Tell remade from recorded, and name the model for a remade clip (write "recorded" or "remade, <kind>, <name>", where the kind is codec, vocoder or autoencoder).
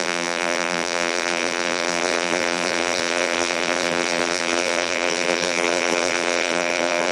remade, vocoder, BigVGAN v2